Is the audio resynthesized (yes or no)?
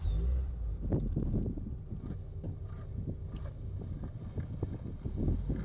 no